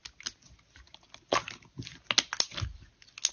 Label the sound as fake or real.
real